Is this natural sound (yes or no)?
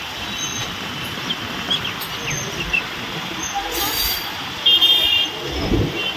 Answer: yes